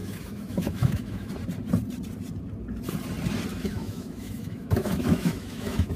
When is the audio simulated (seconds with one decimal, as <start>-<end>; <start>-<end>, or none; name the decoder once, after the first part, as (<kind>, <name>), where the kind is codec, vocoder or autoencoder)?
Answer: 0.0-1.3 (autoencoder, DAC-VAE); 3.5-6.0